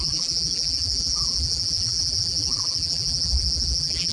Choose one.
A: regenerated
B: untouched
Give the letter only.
A